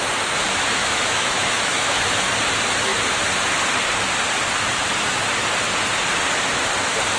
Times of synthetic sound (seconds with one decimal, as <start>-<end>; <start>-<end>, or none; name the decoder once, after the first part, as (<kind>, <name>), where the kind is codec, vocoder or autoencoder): 0.8-2.2 (autoencoder, DAC-VAE)